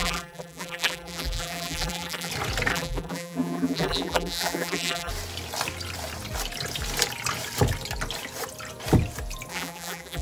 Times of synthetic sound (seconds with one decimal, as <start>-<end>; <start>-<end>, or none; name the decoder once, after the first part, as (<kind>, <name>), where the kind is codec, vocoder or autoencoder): 0.0-2.3 (vocoder, BigVGAN v2); 2.7-5.1; 9.5-10.2